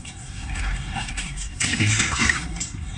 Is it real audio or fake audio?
fake